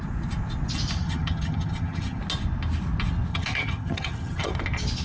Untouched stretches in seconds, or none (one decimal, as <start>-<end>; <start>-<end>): 0.0-1.0; 2.2-3.3; 4.5-5.0